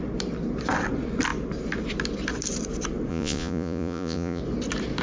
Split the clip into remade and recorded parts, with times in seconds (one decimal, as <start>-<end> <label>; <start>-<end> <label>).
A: 0.0-3.1 recorded; 3.1-4.4 remade; 4.4-5.0 recorded